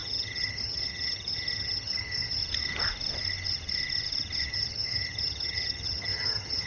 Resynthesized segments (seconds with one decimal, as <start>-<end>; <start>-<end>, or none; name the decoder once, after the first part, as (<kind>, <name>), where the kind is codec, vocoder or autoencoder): 0.0-2.4 (vocoder, HiFi-GAN); 4.5-6.7